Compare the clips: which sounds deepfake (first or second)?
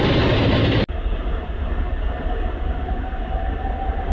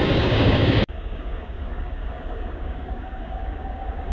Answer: second